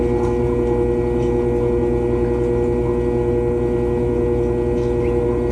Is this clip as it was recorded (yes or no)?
yes